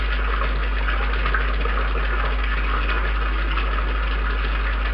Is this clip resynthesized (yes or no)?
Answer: no